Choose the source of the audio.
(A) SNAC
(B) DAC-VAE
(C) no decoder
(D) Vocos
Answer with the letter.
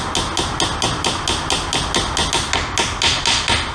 C